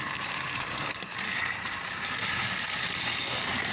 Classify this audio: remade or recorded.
remade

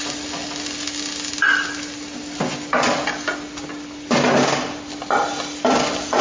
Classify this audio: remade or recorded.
recorded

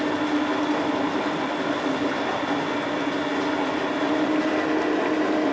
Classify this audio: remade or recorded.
recorded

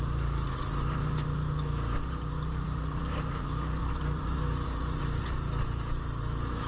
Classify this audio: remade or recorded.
remade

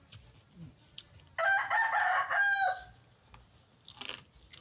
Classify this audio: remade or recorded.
recorded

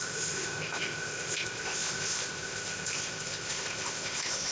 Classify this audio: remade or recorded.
remade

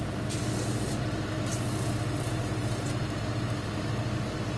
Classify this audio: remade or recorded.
recorded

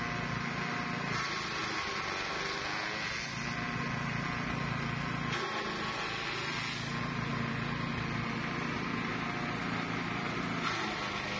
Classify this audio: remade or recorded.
recorded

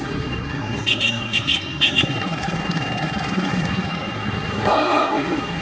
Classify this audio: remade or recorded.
remade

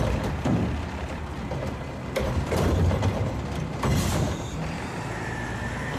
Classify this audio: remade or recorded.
remade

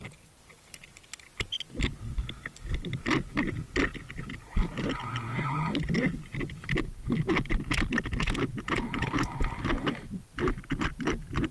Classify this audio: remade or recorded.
recorded